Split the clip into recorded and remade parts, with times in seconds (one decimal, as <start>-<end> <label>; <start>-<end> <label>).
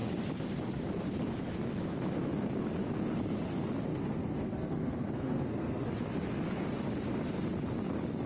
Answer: 0.0-3.9 recorded; 3.9-5.8 remade; 5.8-8.3 recorded